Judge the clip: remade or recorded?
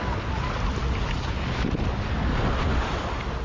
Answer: recorded